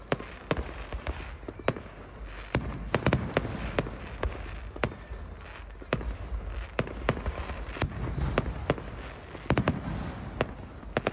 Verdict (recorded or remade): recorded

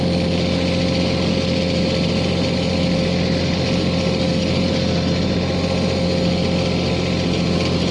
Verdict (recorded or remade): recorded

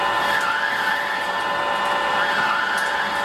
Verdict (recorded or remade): recorded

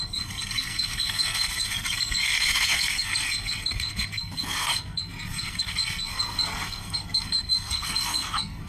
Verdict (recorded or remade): remade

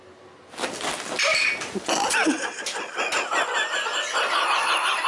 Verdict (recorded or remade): recorded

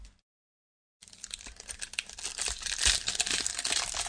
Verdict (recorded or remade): recorded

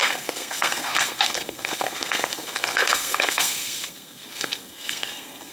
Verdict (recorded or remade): remade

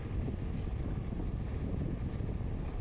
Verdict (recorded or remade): recorded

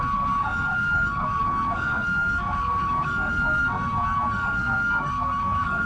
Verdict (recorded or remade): remade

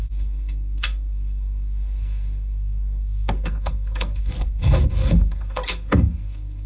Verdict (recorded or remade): remade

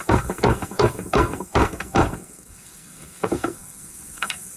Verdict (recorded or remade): remade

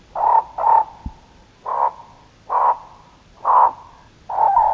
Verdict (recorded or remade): recorded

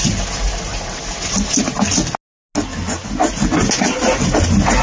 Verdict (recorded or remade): recorded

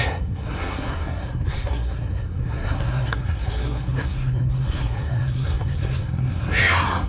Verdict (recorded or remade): remade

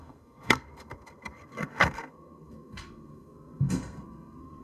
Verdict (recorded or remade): remade